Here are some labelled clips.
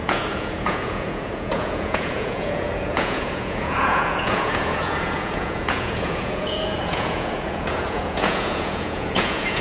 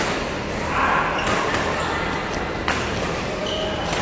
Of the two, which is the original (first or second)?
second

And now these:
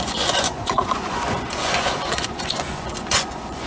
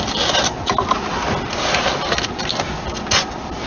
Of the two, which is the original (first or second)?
second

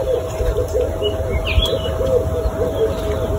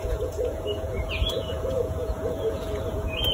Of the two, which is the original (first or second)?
first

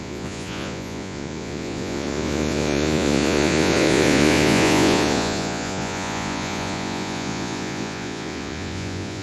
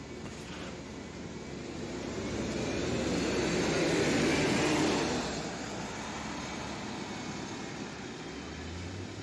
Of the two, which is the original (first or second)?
second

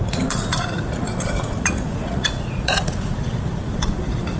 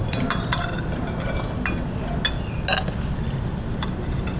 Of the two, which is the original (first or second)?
second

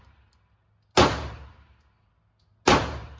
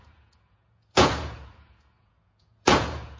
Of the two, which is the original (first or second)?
first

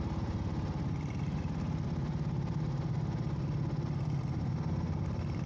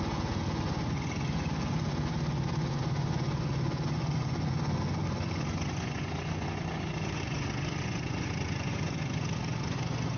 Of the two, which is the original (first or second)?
first